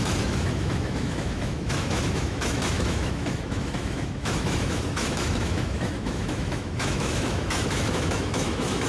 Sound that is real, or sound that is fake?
fake